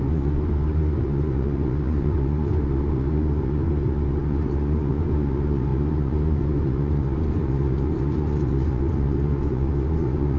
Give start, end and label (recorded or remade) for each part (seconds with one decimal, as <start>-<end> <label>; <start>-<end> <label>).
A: 0.0-10.4 remade